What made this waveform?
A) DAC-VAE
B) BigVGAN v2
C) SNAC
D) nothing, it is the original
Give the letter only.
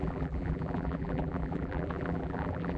B